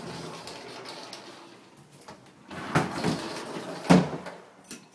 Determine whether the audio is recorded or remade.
recorded